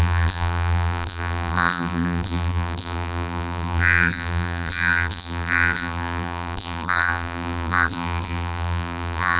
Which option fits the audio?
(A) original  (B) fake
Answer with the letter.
B